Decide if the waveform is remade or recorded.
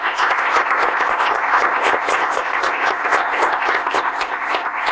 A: remade